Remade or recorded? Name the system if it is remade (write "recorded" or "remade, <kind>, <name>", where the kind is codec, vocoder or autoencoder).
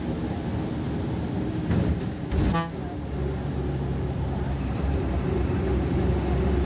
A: recorded